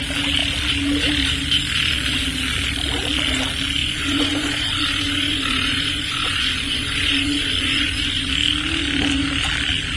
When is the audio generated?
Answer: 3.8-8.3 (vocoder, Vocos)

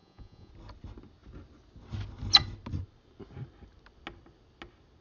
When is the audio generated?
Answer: 0.0-0.5 (vocoder, Vocos)

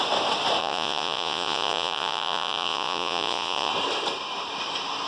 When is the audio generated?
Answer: 0.6-3.7 (vocoder, Vocos)

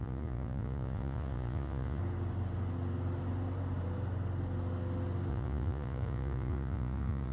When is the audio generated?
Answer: 0.0-2.0 (vocoder, Vocos); 5.3-7.3

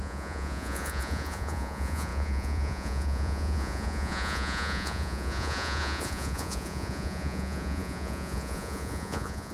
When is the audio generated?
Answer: 0.0-9.5 (vocoder, Vocos)

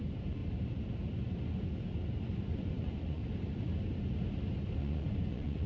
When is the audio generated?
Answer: 0.0-0.4 (vocoder, Vocos); 2.5-3.2; 4.8-5.7

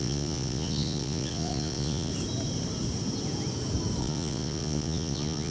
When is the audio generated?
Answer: 0.0-2.1 (vocoder, Vocos); 4.0-5.5